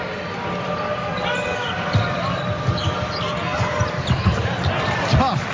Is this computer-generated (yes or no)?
no